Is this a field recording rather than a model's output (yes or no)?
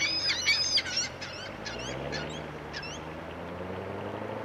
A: yes